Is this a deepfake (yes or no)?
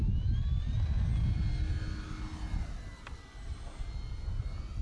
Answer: no